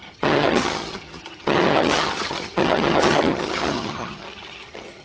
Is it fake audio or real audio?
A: fake